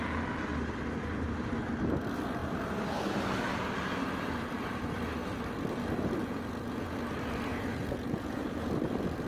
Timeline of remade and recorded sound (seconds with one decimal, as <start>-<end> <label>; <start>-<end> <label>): 0.0-6.2 recorded; 6.2-7.0 remade; 7.0-7.5 recorded; 7.5-8.7 remade; 8.7-9.3 recorded

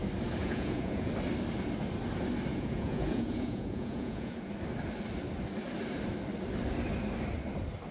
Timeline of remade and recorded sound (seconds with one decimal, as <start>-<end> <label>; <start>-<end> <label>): 0.0-0.4 recorded; 0.4-1.1 remade; 1.1-2.5 recorded; 2.5-4.5 remade; 4.5-7.9 recorded

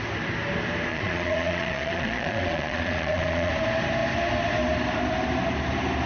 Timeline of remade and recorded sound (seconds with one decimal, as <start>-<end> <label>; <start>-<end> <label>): 0.0-0.9 recorded; 0.9-3.5 remade; 3.5-6.1 recorded

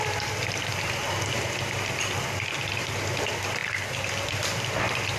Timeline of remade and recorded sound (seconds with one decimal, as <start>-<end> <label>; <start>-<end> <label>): 0.0-5.2 remade